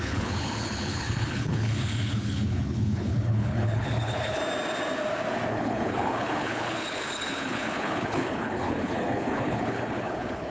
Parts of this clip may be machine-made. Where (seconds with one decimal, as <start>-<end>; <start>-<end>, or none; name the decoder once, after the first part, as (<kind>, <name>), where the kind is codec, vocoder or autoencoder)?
0.0-4.4 (codec, HILCodec); 5.5-10.5